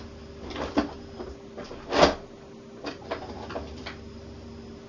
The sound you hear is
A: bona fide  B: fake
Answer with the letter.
A